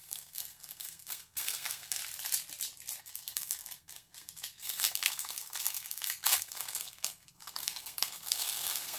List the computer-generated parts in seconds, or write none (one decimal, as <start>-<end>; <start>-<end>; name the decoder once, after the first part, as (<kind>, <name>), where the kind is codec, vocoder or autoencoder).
0.0-2.0 (codec, SNAC); 3.0-9.0